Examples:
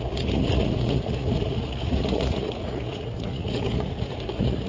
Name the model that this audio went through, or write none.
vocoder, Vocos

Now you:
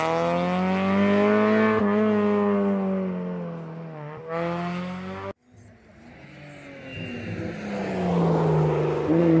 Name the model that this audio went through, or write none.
none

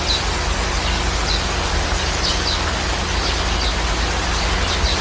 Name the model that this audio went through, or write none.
none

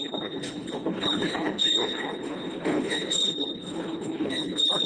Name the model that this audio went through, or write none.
codec, HILCodec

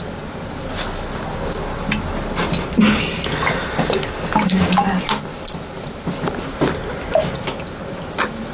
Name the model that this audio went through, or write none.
none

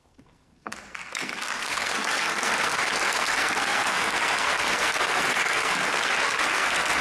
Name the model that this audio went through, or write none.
codec, SNAC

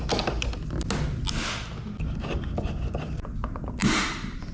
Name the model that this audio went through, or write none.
none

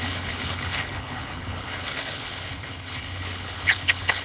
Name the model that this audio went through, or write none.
codec, HILCodec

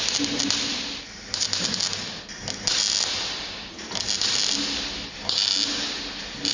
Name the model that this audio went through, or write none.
none